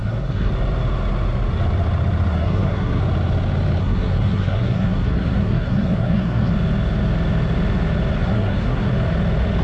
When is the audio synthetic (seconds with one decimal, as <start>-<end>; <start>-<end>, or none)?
0.0-0.5; 2.3-3.0; 3.8-6.5; 8.2-8.9